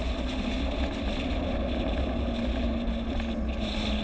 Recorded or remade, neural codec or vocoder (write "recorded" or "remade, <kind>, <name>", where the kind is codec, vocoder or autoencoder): recorded